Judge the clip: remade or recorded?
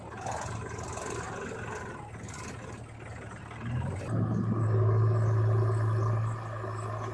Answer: recorded